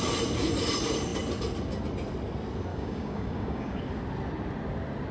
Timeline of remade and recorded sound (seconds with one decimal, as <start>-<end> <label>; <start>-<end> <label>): 0.0-2.7 recorded; 2.7-3.8 remade; 3.8-5.1 recorded